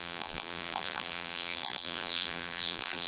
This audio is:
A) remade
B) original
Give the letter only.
A